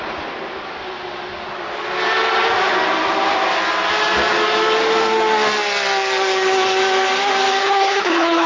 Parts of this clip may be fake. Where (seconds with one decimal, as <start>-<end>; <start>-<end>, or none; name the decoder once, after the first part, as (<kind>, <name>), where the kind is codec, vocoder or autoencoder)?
7.6-8.5 (codec, HILCodec)